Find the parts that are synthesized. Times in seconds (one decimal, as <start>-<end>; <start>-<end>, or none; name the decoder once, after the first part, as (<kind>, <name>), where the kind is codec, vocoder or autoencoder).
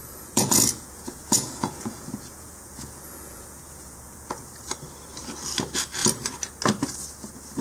0.0-4.6 (vocoder, Vocos)